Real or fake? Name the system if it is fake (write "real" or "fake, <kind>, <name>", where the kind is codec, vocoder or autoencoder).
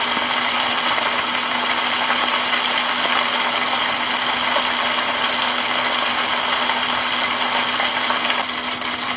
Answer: real